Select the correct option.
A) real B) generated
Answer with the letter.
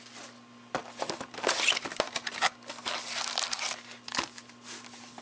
A